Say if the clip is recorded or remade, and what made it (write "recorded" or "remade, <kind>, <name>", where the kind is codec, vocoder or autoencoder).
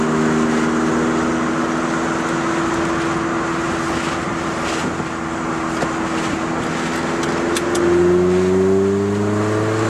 recorded